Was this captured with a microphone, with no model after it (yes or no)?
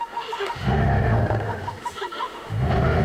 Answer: no